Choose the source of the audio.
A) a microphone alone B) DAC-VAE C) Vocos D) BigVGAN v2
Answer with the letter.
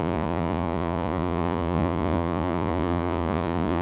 C